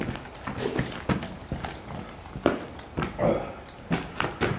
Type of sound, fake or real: real